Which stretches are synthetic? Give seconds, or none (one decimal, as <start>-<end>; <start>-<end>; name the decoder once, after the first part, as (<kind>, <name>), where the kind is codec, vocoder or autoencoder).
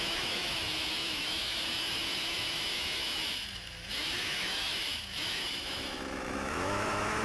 0.0-7.2 (autoencoder, DAC-VAE)